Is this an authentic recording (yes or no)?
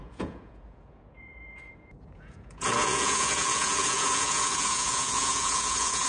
no